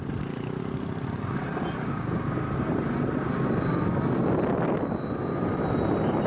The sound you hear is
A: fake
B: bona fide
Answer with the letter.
B